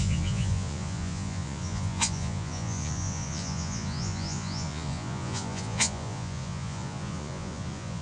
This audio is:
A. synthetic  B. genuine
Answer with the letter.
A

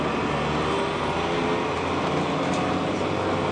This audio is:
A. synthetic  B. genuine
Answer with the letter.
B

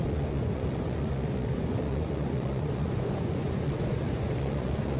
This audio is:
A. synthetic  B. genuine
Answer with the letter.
A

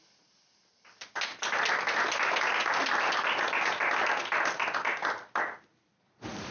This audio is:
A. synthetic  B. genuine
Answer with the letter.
B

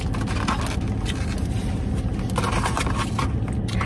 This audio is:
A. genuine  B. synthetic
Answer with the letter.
A